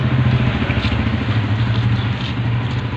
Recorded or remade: recorded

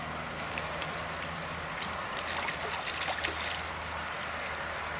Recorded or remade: recorded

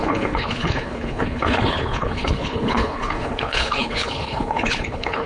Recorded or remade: remade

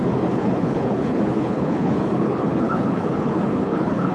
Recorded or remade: remade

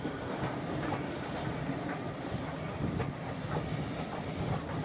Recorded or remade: recorded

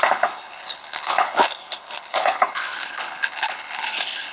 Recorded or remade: remade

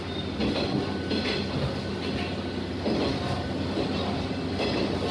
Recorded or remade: recorded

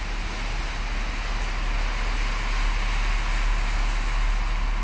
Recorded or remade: recorded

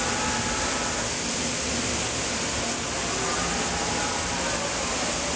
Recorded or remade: recorded